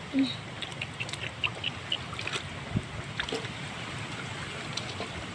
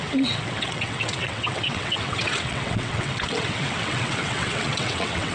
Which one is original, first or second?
first